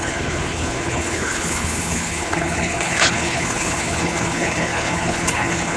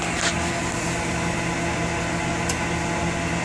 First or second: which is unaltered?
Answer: second